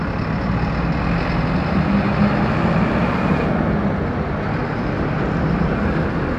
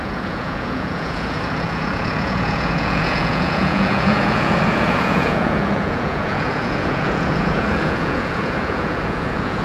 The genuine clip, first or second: first